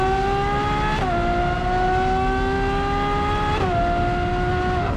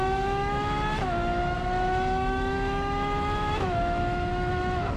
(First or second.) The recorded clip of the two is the first